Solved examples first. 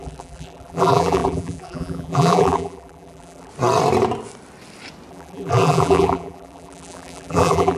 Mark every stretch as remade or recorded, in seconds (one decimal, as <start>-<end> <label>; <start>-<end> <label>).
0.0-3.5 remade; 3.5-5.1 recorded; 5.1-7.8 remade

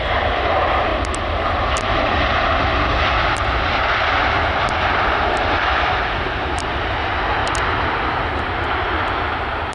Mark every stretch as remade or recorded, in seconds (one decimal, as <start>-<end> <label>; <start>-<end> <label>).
0.0-0.9 remade; 0.9-4.9 recorded; 4.9-7.4 remade; 7.4-8.3 recorded; 8.3-9.7 remade

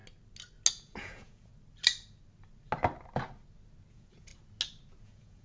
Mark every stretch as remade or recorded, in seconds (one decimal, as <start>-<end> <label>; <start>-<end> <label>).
0.0-0.7 recorded; 0.7-1.5 remade; 1.5-3.9 recorded; 3.9-4.3 remade; 4.3-5.0 recorded; 5.0-5.4 remade